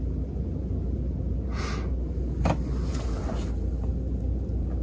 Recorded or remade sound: recorded